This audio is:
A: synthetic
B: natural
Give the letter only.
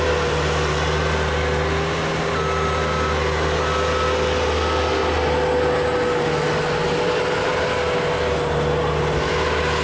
B